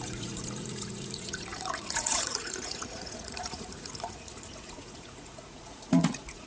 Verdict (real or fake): fake